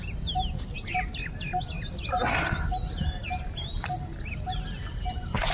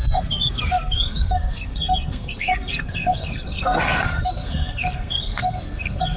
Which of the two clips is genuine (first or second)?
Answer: first